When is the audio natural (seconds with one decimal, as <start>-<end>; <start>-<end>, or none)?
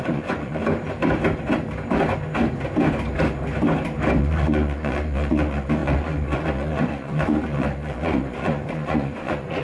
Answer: 0.6-4.2